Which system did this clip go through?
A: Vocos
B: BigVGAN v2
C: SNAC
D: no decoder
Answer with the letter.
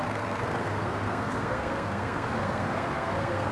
C